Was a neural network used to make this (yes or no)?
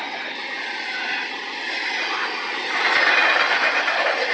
no